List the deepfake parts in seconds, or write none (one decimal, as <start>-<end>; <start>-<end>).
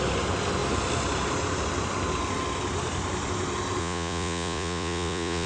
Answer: 3.8-5.5